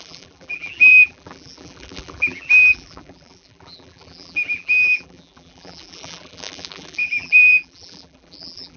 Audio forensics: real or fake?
fake